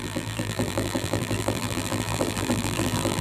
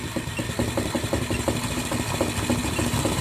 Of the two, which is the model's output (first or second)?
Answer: first